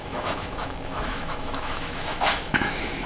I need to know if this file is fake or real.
fake